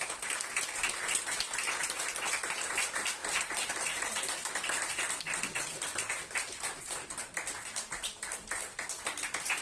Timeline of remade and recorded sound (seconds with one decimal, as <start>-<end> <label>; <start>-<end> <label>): 0.0-3.2 recorded; 3.2-6.1 remade; 6.1-9.6 recorded

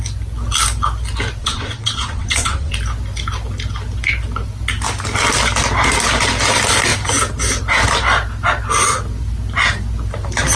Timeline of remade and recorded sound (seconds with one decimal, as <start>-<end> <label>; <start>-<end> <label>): 0.0-1.4 recorded; 1.4-2.7 remade; 2.7-10.6 recorded